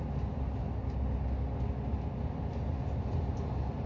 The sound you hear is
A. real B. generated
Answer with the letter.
A